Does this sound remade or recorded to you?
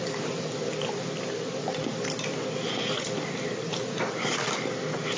recorded